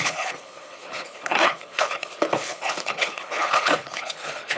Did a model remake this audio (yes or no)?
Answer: yes